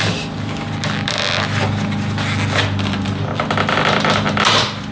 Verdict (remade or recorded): recorded